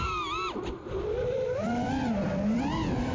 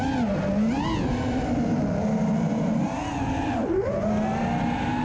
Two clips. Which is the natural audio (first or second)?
second